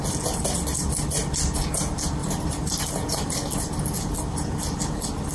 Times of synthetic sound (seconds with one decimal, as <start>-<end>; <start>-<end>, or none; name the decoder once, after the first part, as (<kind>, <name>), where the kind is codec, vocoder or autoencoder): 2.2-2.8 (vocoder, BigVGAN v2)